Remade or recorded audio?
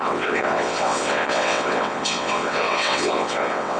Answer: remade